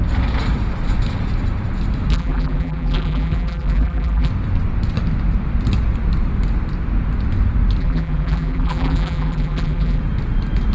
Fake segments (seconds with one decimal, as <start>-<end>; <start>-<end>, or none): 2.1-4.3; 7.8-10.0

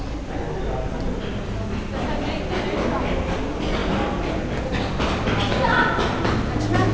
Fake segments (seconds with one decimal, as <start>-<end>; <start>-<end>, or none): none

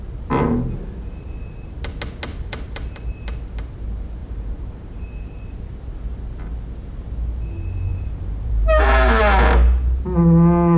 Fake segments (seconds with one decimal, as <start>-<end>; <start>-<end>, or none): 2.3-3.0; 4.2-5.1; 7.9-9.2

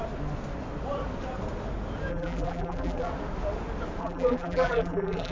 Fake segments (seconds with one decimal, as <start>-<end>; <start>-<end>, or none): 2.1-3.1; 4.0-5.3